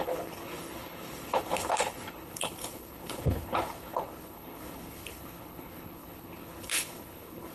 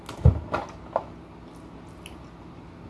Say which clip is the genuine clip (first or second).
second